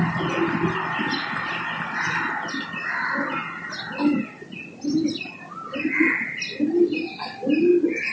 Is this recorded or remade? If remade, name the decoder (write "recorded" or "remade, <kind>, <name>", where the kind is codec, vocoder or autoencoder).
recorded